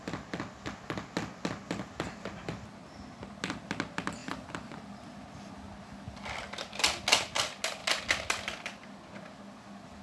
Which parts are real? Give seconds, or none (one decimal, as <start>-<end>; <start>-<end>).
0.0-10.0